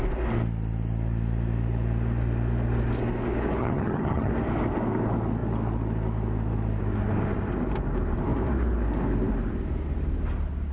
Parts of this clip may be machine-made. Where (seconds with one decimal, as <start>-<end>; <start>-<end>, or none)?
3.6-4.3